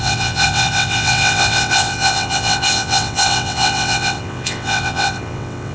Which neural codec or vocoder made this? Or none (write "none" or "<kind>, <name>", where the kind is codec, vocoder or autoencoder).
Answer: vocoder, WaveNeXt